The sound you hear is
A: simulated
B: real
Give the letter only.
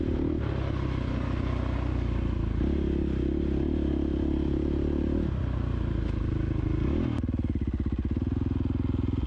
B